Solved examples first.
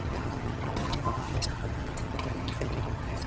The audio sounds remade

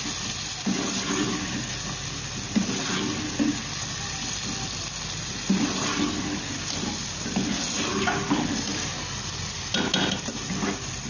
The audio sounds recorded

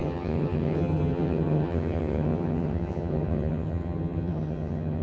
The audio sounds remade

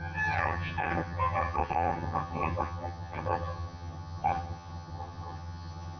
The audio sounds remade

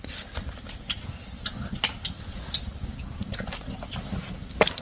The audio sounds recorded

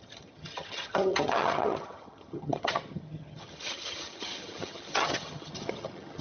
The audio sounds remade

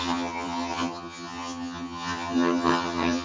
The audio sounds remade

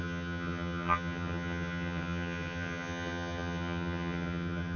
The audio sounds remade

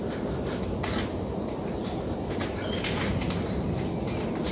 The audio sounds recorded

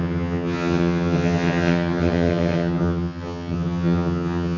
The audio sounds remade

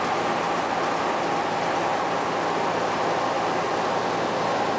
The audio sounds recorded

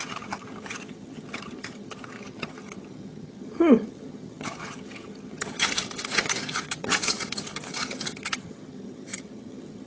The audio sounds remade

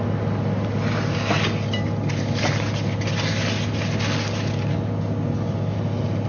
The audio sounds recorded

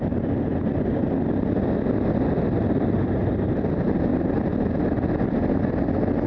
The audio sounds recorded